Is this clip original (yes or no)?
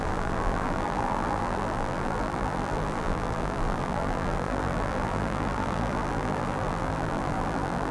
no